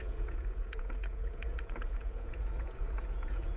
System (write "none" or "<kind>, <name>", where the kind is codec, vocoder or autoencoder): vocoder, Vocos